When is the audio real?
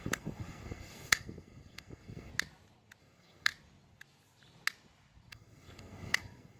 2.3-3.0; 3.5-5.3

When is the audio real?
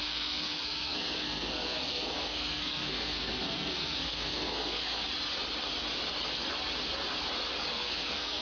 5.0-7.7